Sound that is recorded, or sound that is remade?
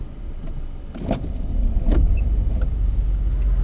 remade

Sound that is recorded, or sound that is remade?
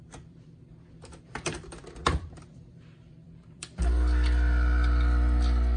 remade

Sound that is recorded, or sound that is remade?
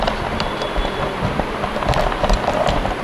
remade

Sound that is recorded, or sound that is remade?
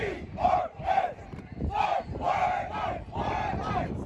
remade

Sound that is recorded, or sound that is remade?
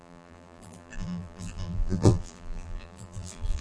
remade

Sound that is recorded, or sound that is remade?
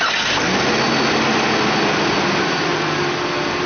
recorded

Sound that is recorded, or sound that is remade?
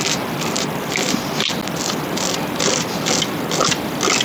recorded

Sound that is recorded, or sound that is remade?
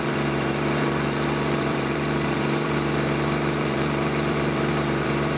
remade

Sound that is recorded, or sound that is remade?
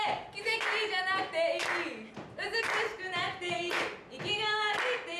recorded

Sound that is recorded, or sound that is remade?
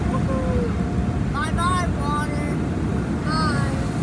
recorded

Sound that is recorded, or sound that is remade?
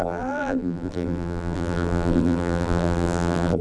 remade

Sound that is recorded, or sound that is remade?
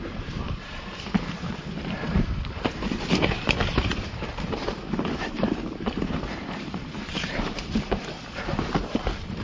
remade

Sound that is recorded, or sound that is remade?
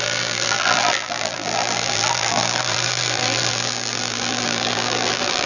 remade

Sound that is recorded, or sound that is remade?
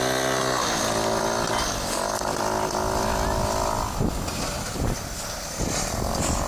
recorded